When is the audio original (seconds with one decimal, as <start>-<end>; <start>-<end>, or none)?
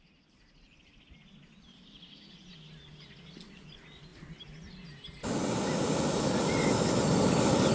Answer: 0.0-7.7